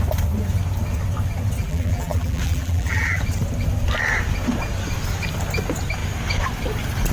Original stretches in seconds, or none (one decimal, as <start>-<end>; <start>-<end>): 0.0-1.6; 3.2-7.1